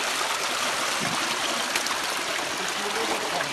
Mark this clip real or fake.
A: real